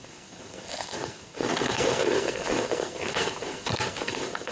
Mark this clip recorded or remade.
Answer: remade